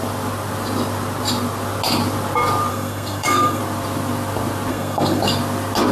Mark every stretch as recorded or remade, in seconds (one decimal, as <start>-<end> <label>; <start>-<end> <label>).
0.0-2.7 recorded; 2.7-3.6 remade; 3.6-4.7 recorded; 4.7-5.2 remade; 5.2-5.9 recorded